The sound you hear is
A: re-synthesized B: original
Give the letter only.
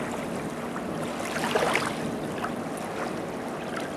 B